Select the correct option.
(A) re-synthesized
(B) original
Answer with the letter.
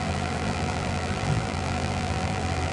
A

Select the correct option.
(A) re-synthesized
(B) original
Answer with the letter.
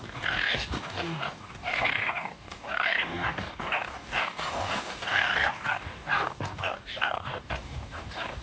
A